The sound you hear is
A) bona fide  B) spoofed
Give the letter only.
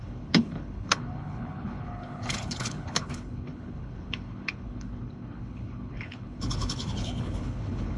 B